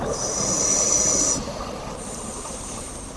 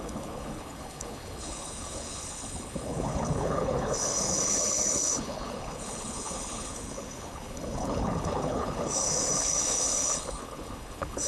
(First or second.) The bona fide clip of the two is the first